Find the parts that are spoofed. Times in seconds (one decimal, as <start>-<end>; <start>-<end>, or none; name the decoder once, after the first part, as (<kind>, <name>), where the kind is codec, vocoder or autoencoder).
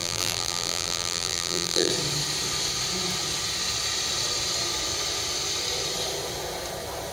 0.0-1.9 (vocoder, BigVGAN v2)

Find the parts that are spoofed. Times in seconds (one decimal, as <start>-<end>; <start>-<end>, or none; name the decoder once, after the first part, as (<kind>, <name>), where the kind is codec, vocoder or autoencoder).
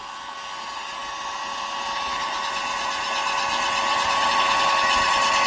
none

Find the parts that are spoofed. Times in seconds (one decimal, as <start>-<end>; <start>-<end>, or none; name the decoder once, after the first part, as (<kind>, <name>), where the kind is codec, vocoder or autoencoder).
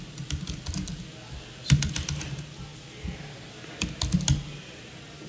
none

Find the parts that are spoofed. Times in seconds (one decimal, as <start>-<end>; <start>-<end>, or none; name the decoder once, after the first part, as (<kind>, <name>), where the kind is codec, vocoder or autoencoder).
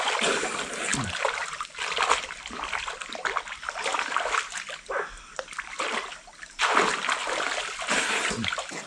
none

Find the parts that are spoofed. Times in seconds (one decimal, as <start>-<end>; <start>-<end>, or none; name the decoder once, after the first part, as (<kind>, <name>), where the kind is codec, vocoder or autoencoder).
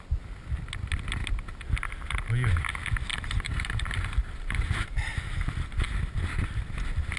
3.1-5.9 (vocoder, BigVGAN v2)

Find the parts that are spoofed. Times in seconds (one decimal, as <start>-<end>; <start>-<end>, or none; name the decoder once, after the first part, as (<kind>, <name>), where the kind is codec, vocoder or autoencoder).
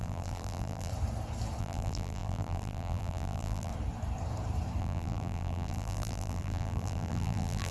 0.0-0.9 (vocoder, BigVGAN v2); 1.6-3.7; 4.8-7.7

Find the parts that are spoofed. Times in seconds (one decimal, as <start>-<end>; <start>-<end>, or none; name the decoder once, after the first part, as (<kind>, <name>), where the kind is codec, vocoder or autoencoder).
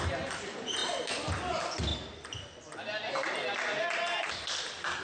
none